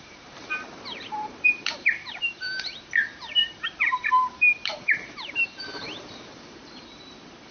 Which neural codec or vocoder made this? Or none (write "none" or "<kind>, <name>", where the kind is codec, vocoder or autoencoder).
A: vocoder, BigVGAN v2